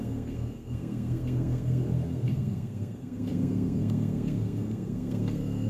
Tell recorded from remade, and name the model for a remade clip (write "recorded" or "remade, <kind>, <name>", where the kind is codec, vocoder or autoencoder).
remade, codec, SNAC